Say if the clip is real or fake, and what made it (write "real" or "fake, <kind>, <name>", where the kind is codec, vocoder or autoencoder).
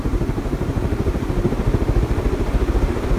fake, vocoder, BigVGAN v2